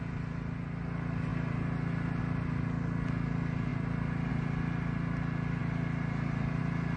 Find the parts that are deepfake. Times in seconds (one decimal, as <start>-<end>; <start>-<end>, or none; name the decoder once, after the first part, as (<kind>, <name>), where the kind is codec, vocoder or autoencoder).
none